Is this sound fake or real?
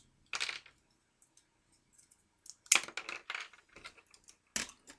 real